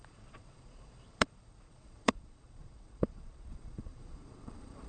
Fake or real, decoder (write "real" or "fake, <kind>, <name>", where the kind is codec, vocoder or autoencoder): fake, vocoder, Vocos